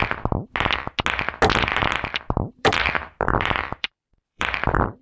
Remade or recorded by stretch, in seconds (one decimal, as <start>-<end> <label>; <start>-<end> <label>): 0.0-1.8 recorded; 1.8-5.0 remade